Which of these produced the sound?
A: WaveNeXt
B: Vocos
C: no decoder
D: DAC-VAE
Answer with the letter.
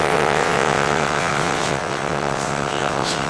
A